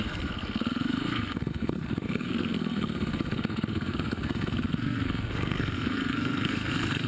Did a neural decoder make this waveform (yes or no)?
yes